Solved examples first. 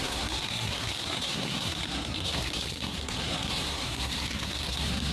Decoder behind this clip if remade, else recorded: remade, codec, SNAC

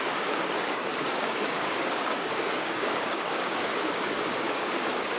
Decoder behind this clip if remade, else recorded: remade, codec, DAC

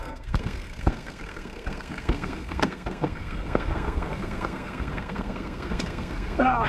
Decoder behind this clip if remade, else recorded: remade, codec, SNAC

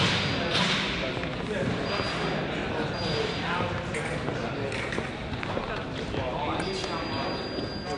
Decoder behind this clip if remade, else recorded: recorded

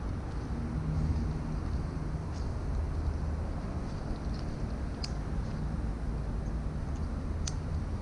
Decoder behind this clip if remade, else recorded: recorded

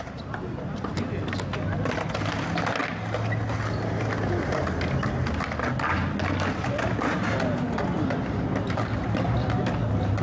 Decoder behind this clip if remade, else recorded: recorded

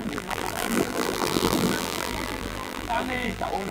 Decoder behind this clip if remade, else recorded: remade, vocoder, BigVGAN v2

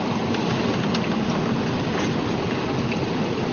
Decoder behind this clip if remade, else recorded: recorded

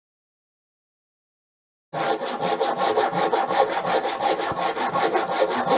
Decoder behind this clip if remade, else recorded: recorded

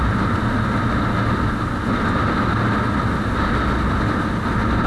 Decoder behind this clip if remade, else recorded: recorded